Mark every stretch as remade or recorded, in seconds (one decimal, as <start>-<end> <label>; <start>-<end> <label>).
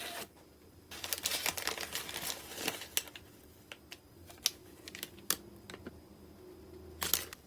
0.0-7.5 recorded